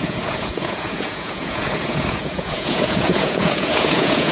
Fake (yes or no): yes